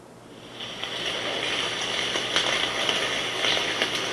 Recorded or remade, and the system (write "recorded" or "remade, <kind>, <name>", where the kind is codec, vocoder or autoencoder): recorded